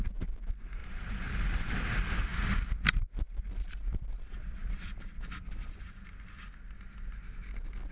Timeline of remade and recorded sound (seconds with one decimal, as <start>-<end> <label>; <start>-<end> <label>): 0.0-0.8 recorded; 0.8-1.8 remade; 1.8-2.3 recorded; 2.3-4.9 remade; 4.9-7.9 recorded

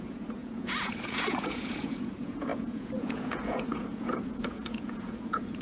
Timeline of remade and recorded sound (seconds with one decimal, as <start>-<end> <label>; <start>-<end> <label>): 0.0-5.6 remade

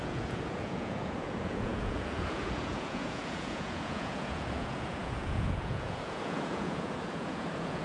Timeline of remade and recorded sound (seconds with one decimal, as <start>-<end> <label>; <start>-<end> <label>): 0.0-7.8 remade

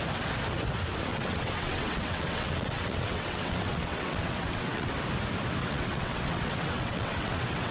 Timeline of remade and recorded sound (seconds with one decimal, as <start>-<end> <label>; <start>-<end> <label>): 0.0-1.1 recorded; 1.1-4.9 remade; 4.9-5.6 recorded; 5.6-7.7 remade

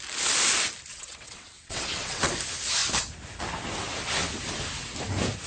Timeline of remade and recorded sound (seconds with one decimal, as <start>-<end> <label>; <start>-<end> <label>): 0.0-0.9 recorded; 0.9-2.3 remade; 2.3-5.5 recorded

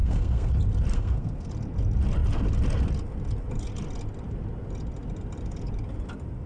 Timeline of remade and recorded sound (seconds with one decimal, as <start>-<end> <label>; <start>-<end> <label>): 0.0-0.5 remade; 0.5-0.9 recorded; 0.9-1.5 remade; 1.5-6.5 recorded

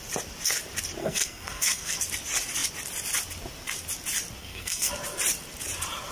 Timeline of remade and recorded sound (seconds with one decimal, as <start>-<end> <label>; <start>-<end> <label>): 0.0-1.0 recorded; 1.0-2.0 remade; 2.0-4.4 recorded; 4.4-4.9 remade; 4.9-6.1 recorded

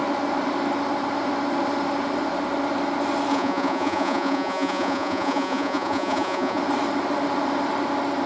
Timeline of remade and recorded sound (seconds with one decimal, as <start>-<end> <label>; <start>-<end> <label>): 0.0-3.3 recorded; 3.3-6.6 remade; 6.6-8.3 recorded